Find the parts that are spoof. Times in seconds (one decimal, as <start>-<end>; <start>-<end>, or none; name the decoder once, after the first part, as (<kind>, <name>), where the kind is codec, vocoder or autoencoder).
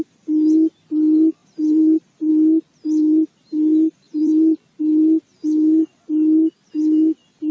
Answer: 1.4-2.3 (vocoder, BigVGAN v2); 4.2-4.8